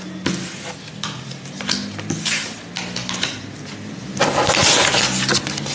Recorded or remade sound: recorded